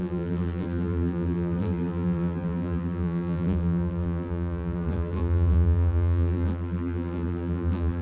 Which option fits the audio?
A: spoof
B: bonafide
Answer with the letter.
A